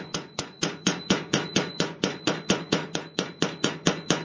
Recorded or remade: remade